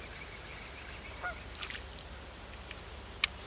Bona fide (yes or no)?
yes